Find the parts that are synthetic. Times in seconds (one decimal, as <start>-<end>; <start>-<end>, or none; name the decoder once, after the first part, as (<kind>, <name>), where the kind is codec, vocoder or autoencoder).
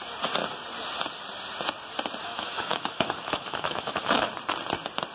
2.2-4.3 (autoencoder, DAC-VAE)